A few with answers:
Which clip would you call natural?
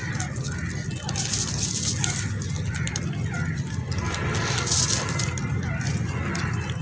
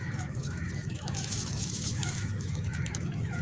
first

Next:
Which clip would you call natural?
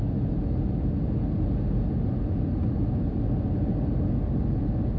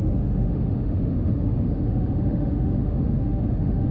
first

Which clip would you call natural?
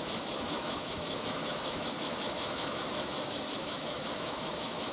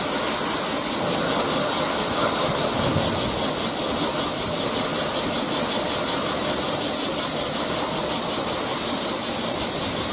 second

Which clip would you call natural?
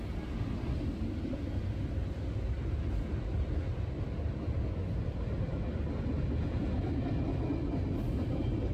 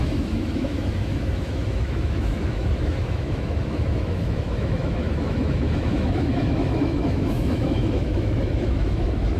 first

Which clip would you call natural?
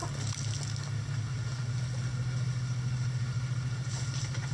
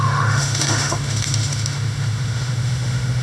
first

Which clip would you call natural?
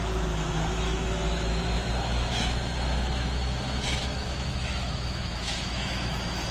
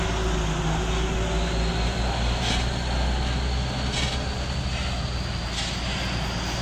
second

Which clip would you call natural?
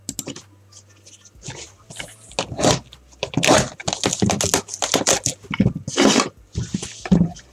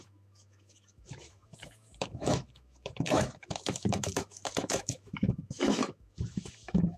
first